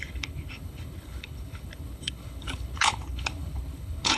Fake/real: fake